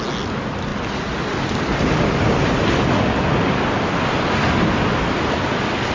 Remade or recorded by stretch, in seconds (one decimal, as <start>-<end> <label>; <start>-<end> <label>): 0.0-5.9 recorded